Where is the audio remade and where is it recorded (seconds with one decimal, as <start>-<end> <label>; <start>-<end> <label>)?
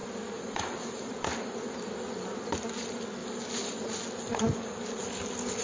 0.0-0.9 remade; 0.9-3.2 recorded; 3.2-5.1 remade; 5.1-5.6 recorded